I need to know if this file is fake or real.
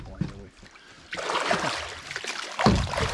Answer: fake